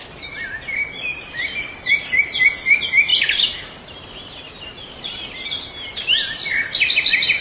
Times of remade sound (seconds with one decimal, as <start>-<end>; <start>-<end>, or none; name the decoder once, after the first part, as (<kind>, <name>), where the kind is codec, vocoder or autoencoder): none